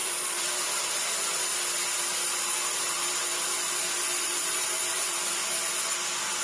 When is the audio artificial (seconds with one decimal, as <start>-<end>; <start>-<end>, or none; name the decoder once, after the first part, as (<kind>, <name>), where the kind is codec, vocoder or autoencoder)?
0.0-1.5 (vocoder, BigVGAN v2); 4.2-5.4